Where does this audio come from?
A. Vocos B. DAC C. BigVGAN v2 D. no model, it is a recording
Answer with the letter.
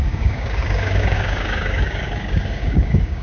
B